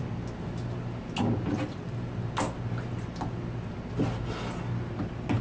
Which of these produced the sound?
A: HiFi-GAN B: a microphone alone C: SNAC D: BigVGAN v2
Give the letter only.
B